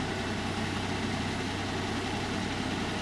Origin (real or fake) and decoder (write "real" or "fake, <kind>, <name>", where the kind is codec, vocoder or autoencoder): real